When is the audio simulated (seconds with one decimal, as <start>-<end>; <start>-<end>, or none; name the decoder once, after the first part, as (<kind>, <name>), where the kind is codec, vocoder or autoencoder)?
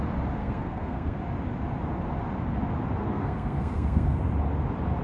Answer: 0.4-1.2 (codec, SNAC); 3.0-4.2